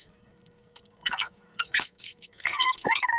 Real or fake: fake